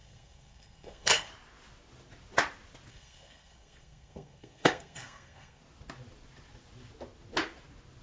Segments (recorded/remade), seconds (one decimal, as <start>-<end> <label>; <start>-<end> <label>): 0.0-1.3 remade; 1.3-2.9 recorded; 2.9-5.6 remade; 5.6-8.0 recorded

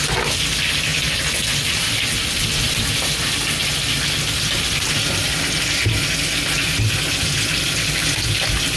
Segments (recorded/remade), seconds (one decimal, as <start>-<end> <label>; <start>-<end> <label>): 0.0-8.8 recorded

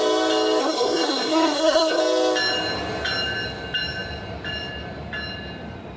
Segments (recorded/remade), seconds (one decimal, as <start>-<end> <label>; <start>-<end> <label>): 0.0-0.6 recorded; 0.6-2.0 remade; 2.0-6.0 recorded